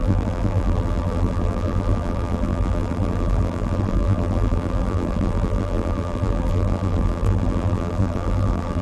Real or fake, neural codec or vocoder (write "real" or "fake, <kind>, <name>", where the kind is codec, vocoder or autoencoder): fake, vocoder, BigVGAN v2